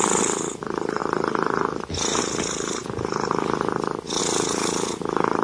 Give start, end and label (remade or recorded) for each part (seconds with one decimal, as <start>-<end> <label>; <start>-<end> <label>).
0.0-5.4 recorded